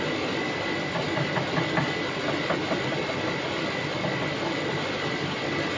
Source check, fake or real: real